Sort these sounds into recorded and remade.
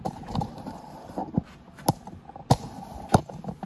recorded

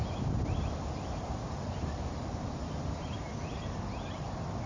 recorded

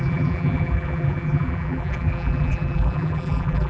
remade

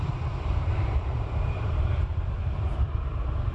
remade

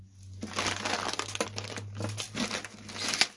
recorded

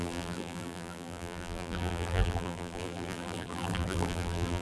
remade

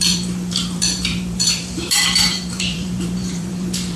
remade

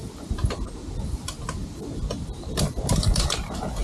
remade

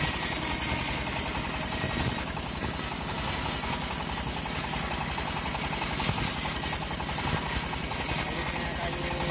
recorded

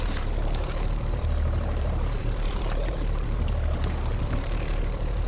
remade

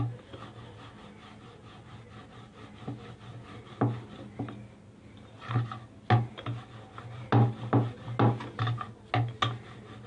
recorded